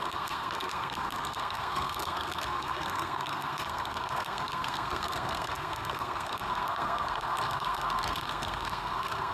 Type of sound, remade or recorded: remade